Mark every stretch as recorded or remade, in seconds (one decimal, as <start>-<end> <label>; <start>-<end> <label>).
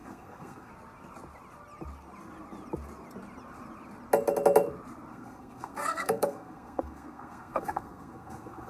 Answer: 0.0-0.7 remade; 0.7-5.1 recorded; 5.1-8.7 remade